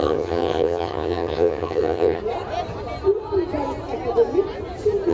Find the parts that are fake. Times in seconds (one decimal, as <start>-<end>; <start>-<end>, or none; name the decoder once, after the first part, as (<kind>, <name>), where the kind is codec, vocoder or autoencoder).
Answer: 0.0-2.2 (vocoder, HiFi-GAN)